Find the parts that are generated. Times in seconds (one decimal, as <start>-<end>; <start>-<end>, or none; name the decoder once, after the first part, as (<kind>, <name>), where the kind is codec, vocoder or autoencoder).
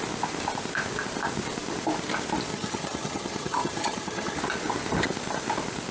2.5-4.4 (vocoder, HiFi-GAN)